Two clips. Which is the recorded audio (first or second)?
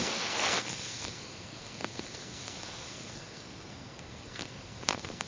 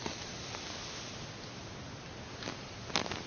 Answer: second